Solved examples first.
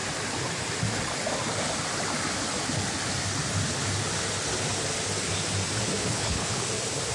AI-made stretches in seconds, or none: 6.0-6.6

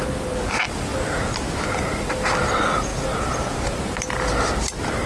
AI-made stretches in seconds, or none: none

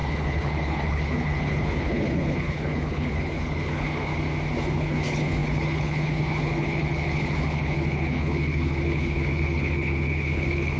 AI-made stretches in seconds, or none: 0.0-4.1; 4.7-10.8

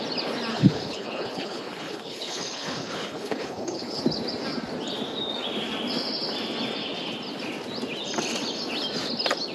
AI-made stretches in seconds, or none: 0.5-4.0

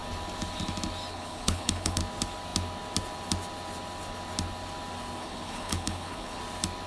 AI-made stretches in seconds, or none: 1.1-2.0; 5.2-6.4

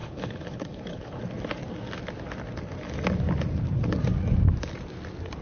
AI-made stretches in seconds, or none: 0.0-1.2

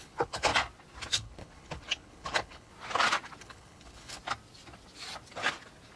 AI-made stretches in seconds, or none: 0.0-0.5; 1.1-2.7; 3.4-4.2

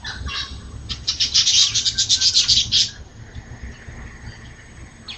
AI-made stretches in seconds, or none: none